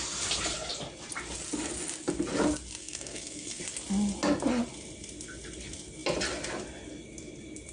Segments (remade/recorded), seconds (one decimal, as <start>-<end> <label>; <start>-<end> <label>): 0.0-2.8 recorded; 2.8-3.6 remade; 3.6-7.7 recorded